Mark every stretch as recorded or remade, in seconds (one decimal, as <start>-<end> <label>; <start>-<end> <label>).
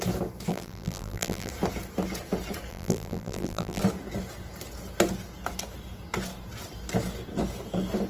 0.0-0.5 recorded; 0.5-1.5 remade; 1.5-2.7 recorded; 2.7-3.8 remade; 3.8-8.1 recorded